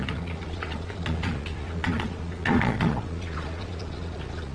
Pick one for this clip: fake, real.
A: fake